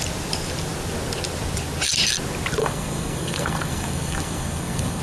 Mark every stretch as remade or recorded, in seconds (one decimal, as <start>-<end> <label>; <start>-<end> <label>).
0.0-2.6 recorded; 2.6-5.0 remade